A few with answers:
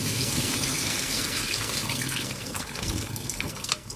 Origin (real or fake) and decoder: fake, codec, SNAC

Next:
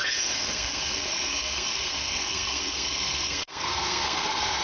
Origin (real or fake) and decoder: fake, codec, SNAC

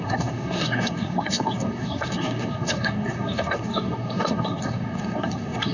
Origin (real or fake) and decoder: fake, codec, SNAC